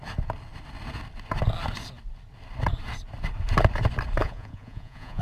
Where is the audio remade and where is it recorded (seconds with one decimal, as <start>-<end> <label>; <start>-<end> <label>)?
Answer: 0.0-4.2 recorded; 4.2-5.2 remade